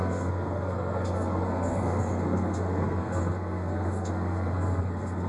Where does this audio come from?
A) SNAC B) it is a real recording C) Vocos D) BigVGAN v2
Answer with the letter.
A